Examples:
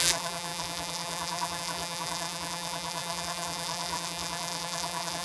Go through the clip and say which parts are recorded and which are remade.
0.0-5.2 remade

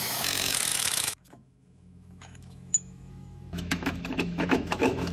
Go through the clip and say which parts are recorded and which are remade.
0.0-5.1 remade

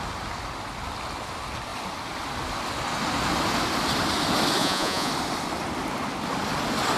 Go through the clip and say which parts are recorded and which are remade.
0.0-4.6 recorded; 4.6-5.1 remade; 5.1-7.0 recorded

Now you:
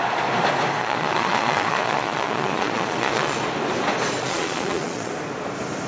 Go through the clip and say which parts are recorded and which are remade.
0.0-0.8 recorded; 0.8-3.4 remade; 3.4-4.2 recorded; 4.2-5.1 remade; 5.1-5.9 recorded

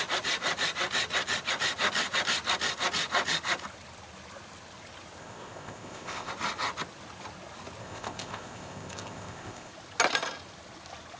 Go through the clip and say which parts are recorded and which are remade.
0.0-5.2 recorded; 5.2-6.3 remade; 6.3-7.8 recorded; 7.8-9.7 remade; 9.7-11.2 recorded

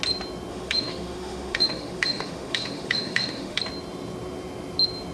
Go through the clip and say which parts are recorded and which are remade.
0.0-0.5 recorded; 0.5-3.6 remade; 3.6-5.1 recorded

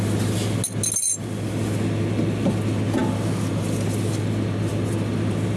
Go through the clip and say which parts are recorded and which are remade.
0.0-5.6 recorded